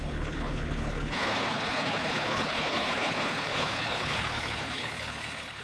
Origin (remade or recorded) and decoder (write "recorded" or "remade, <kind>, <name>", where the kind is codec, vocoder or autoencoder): remade, codec, HILCodec